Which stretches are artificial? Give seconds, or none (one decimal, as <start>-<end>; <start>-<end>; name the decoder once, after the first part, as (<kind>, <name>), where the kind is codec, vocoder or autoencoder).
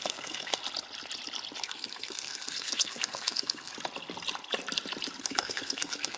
0.0-0.6 (codec, SNAC); 1.6-3.7; 5.2-6.2